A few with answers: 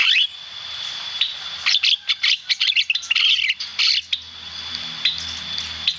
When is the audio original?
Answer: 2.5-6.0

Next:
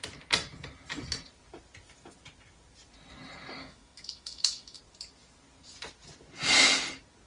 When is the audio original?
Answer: 0.0-3.6; 4.8-7.3

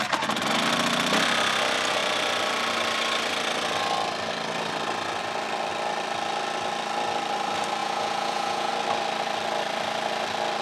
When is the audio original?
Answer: 0.0-7.8; 8.7-10.6

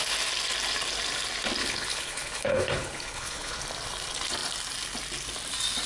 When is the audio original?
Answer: 0.0-1.6; 3.6-5.9

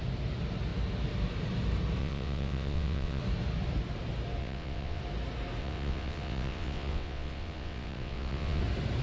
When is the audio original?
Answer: 0.0-2.0; 3.2-4.4; 5.0-5.6; 8.6-9.0

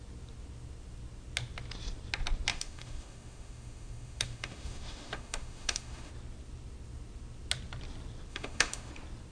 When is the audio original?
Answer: 0.0-2.5; 6.1-8.3; 8.9-9.3